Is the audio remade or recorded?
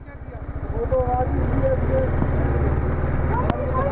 recorded